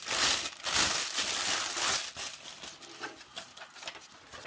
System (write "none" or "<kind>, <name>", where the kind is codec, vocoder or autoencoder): none